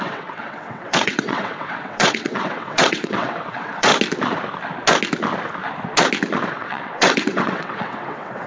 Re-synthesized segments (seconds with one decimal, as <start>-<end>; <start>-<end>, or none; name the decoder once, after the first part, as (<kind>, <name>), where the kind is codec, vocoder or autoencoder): 0.0-3.9 (vocoder, WaveNeXt); 6.5-8.5